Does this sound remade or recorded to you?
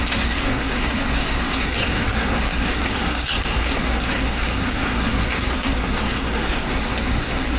remade